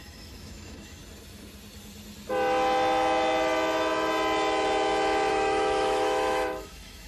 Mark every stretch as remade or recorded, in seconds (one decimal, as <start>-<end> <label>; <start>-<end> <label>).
0.0-1.0 remade; 1.0-5.3 recorded; 5.3-7.1 remade